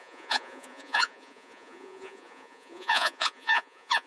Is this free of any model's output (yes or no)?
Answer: no